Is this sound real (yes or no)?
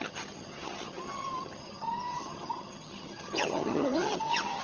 no